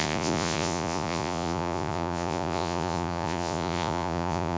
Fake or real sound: fake